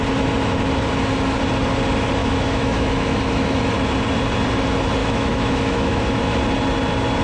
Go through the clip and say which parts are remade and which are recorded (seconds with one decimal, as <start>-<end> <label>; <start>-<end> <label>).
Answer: 0.0-2.2 recorded; 2.2-3.6 remade; 3.6-5.0 recorded; 5.0-6.2 remade; 6.2-7.2 recorded